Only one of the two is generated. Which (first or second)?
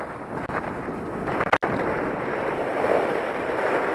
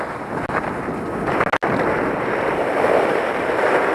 first